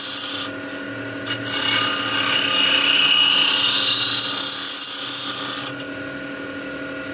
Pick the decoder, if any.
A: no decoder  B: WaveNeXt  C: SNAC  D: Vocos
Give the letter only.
A